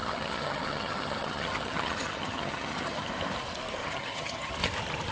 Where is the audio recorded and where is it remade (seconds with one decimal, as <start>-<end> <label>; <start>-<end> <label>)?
0.0-3.1 remade; 3.1-3.8 recorded; 3.8-4.5 remade; 4.5-5.1 recorded

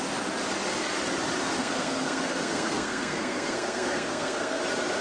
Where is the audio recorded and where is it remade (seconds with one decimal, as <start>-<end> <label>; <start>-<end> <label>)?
0.0-1.6 recorded; 1.6-4.6 remade; 4.6-5.0 recorded

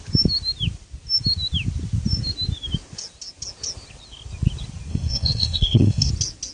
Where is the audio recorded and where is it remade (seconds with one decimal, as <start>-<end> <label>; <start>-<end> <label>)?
0.0-4.9 recorded; 4.9-6.1 remade; 6.1-6.5 recorded

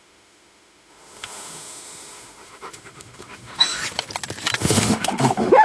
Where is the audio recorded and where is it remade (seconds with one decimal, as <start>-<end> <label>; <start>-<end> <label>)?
0.0-3.8 remade; 3.8-4.6 recorded; 4.6-5.6 remade

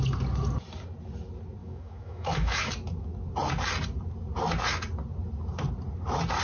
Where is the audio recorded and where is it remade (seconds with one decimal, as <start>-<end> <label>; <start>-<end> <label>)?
0.0-1.6 recorded; 1.6-2.7 remade; 2.7-6.4 recorded

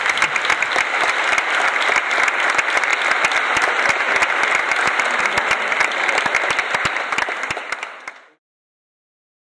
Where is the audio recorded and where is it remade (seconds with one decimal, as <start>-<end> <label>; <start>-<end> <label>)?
0.0-2.9 remade; 2.9-5.2 recorded; 5.2-9.6 remade